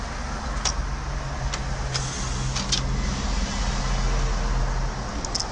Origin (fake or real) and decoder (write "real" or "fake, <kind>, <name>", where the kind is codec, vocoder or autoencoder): real